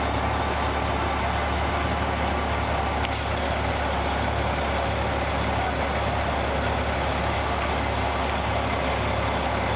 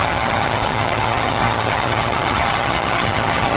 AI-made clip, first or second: second